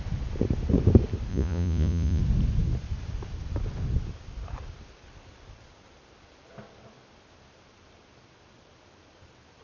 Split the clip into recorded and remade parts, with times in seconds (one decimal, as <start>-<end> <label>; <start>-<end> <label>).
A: 0.0-1.3 recorded; 1.3-2.2 remade; 2.2-9.6 recorded